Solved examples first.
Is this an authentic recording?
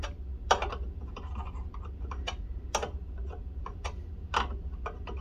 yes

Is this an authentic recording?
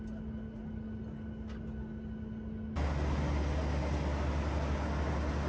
yes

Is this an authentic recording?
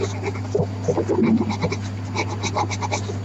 yes